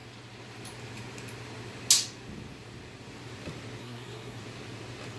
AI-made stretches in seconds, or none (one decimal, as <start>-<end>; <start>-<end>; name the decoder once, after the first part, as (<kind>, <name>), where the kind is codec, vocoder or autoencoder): 3.8-4.4 (codec, SNAC)

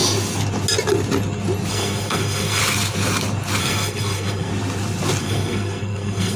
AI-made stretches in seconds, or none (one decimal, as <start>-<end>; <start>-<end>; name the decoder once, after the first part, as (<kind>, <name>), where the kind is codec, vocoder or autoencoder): 1.7-2.6 (codec, SNAC); 3.6-4.5; 5.2-6.4

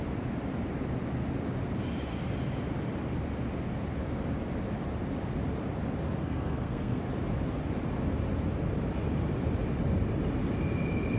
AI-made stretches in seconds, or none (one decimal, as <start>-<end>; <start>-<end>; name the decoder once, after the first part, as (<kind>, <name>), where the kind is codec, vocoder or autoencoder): 6.2-7.0 (codec, SNAC)

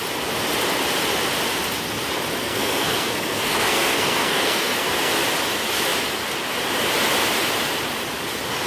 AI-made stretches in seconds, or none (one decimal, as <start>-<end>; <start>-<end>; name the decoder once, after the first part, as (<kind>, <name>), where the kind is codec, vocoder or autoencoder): 2.4-5.1 (codec, SNAC)